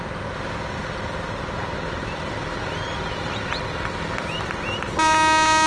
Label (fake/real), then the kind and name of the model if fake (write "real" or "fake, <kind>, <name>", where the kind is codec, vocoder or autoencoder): real